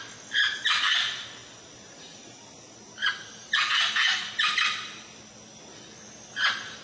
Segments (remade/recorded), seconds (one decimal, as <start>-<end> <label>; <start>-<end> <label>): 0.0-6.8 recorded